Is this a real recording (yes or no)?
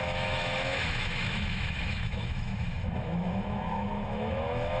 no